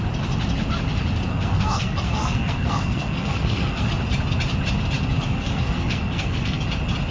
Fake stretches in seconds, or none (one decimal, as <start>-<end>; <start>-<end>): 1.3-3.9; 5.3-6.6